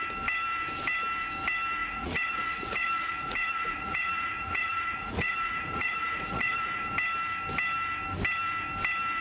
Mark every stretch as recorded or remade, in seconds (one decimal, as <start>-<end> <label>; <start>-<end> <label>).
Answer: 0.0-1.8 recorded; 1.8-6.9 remade; 6.9-9.2 recorded